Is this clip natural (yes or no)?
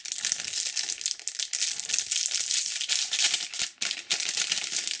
yes